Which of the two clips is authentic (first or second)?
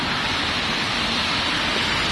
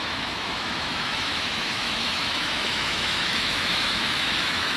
first